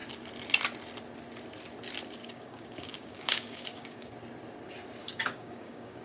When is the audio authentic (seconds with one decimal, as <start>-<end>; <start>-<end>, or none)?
0.0-2.2; 4.1-5.0